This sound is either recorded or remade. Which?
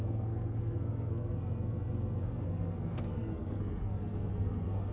remade